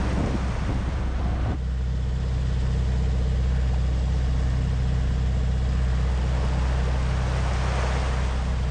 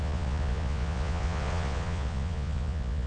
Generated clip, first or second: second